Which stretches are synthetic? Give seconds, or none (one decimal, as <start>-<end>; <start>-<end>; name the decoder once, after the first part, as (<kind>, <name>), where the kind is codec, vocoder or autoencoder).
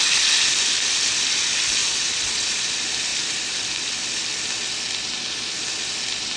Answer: 1.8-2.7 (vocoder, Vocos)